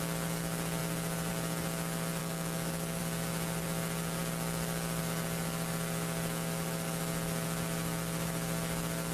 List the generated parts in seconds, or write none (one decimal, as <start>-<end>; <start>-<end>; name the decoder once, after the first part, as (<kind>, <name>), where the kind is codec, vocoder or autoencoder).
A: 2.2-3.0 (autoencoder, DAC-VAE)